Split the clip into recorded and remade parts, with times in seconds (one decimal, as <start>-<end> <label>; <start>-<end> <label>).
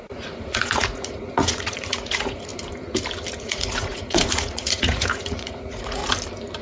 0.0-2.5 remade; 2.5-3.4 recorded; 3.4-6.0 remade; 6.0-6.6 recorded